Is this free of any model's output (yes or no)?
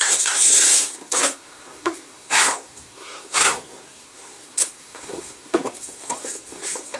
no